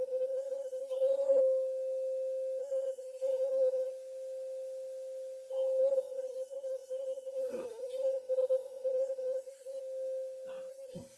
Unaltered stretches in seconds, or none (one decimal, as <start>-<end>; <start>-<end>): 1.4-2.6; 3.9-5.8; 9.8-10.7